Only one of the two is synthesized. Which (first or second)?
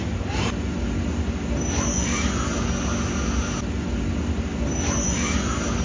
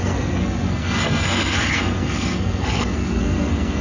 second